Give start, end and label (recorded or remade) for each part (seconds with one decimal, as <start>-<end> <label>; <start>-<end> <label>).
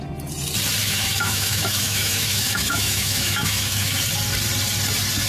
0.0-0.8 recorded; 0.8-4.0 remade; 4.0-5.3 recorded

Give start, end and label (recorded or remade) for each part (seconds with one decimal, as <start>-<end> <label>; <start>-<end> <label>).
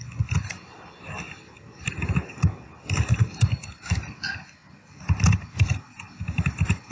0.0-6.9 recorded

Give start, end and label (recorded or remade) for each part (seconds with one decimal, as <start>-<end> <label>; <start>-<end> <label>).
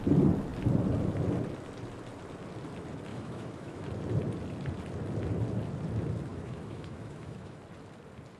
0.0-3.1 recorded; 3.1-3.9 remade; 3.9-6.3 recorded; 6.3-7.6 remade; 7.6-8.4 recorded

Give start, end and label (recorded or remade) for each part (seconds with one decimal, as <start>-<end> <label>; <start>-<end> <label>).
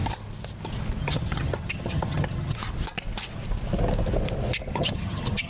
0.0-1.0 recorded; 1.0-2.6 remade; 2.6-4.7 recorded; 4.7-5.5 remade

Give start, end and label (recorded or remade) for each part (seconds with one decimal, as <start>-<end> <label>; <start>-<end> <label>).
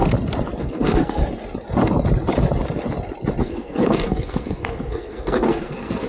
0.0-0.6 recorded; 0.6-1.2 remade; 1.2-3.4 recorded; 3.4-6.1 remade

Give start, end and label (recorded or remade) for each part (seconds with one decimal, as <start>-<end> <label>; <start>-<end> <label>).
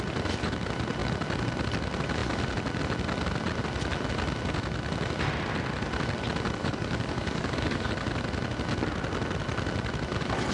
0.0-6.6 recorded; 6.6-7.9 remade; 7.9-10.5 recorded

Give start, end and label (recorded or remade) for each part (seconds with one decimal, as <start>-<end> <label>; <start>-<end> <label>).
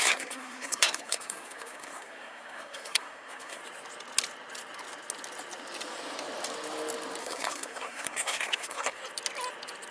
0.0-3.6 remade; 3.6-7.2 recorded; 7.2-9.0 remade; 9.0-9.9 recorded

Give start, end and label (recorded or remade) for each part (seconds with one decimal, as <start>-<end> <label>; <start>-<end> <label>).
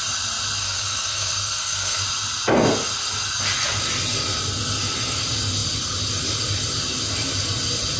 0.0-0.6 recorded; 0.6-2.0 remade; 2.0-8.0 recorded